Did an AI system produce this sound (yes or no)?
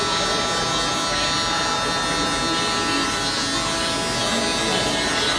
no